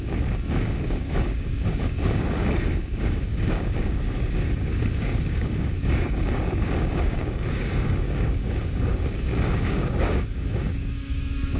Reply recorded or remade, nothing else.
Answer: remade